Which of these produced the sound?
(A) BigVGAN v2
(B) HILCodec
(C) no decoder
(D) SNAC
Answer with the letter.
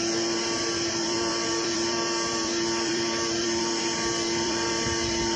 A